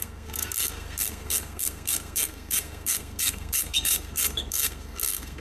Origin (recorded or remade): remade